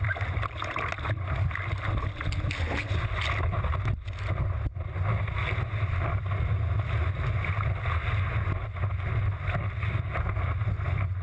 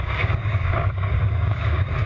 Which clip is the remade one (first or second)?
second